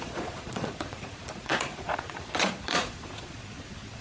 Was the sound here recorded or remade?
remade